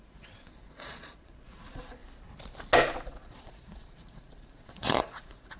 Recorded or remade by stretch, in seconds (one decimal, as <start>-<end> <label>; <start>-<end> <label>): 0.0-2.0 remade; 2.0-3.1 recorded; 3.1-5.6 remade